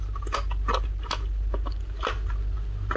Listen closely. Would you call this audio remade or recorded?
recorded